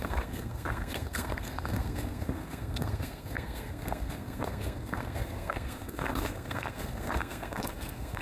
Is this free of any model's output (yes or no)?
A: no